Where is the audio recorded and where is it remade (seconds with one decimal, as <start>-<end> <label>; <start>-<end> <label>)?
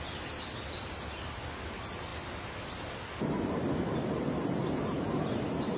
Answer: 0.0-5.8 recorded